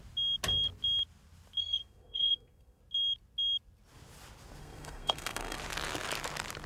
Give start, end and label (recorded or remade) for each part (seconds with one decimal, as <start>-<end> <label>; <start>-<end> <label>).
0.0-1.6 recorded; 1.6-2.8 remade; 2.8-4.6 recorded; 4.6-5.6 remade; 5.6-6.7 recorded